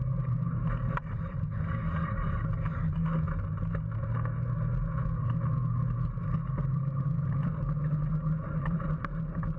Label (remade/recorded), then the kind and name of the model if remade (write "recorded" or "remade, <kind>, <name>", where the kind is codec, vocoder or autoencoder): recorded